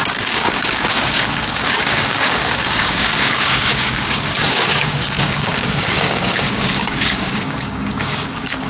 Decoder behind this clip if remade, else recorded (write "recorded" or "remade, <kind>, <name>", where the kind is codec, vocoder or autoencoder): remade, codec, DAC